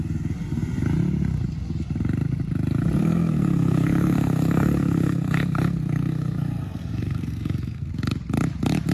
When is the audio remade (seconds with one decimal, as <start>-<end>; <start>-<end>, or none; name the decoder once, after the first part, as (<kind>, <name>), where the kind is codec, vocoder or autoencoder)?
3.0-7.9 (codec, SNAC)